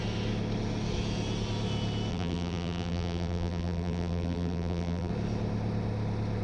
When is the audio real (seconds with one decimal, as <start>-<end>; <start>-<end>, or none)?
0.0-2.1; 5.1-6.4